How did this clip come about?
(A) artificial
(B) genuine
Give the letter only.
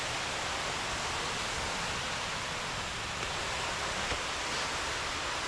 B